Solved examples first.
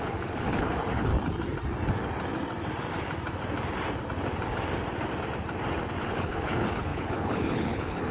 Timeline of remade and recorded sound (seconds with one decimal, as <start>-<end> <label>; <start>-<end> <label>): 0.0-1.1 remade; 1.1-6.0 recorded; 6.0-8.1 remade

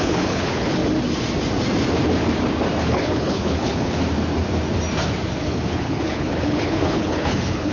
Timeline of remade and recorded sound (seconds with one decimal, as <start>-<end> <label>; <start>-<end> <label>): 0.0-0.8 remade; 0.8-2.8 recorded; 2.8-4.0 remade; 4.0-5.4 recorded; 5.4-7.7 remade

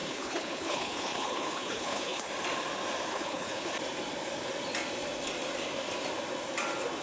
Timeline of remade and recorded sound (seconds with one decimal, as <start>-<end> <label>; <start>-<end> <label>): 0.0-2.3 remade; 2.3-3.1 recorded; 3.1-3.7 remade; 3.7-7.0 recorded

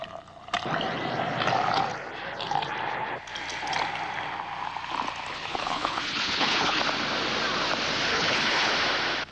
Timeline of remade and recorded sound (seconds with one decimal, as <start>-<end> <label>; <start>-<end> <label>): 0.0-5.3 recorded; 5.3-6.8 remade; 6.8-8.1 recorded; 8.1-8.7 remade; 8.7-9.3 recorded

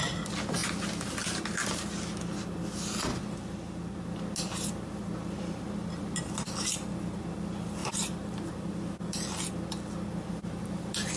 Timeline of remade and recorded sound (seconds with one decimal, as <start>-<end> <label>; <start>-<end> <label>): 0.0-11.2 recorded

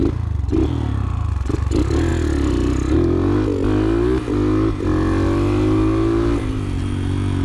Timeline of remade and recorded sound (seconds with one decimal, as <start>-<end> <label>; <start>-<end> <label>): 0.0-7.4 recorded